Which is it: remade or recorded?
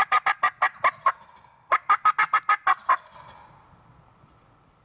recorded